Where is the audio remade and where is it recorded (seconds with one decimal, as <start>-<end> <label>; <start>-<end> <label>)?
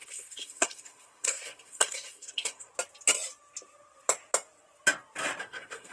0.0-2.7 remade; 2.7-5.4 recorded; 5.4-5.9 remade